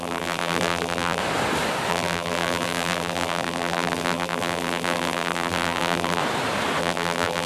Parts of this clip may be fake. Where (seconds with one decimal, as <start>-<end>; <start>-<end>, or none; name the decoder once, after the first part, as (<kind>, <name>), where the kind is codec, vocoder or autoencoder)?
0.0-1.2 (vocoder, BigVGAN v2); 1.9-6.2; 6.8-7.5